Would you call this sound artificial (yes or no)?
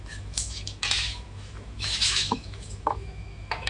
yes